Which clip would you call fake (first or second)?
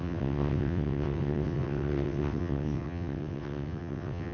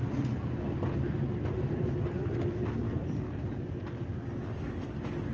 first